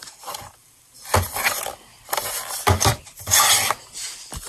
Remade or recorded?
recorded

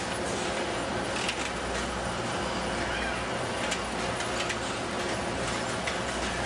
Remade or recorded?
recorded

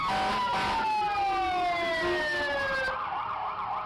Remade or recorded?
recorded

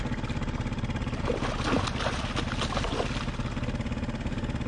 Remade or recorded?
recorded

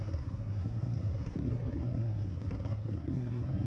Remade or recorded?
remade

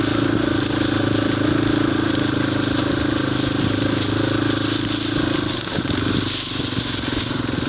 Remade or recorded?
recorded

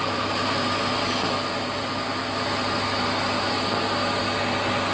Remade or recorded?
recorded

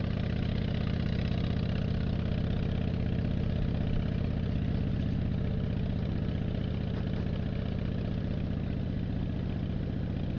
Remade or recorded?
recorded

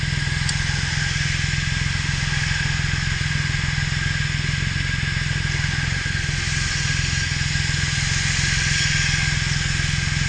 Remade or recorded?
recorded